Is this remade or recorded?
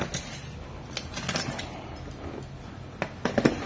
recorded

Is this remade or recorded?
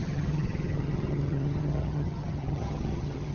remade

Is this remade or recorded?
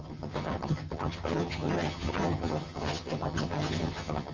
remade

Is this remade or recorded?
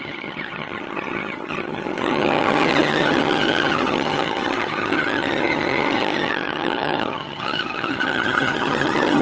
remade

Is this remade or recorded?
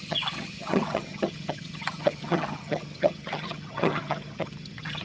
remade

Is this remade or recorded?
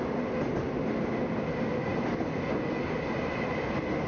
recorded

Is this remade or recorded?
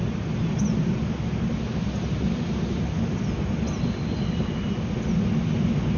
recorded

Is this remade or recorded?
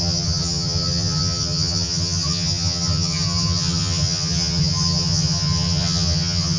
remade